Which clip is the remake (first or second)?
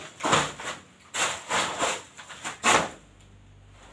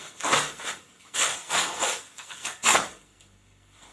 second